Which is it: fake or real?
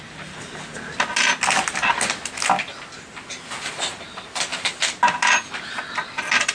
real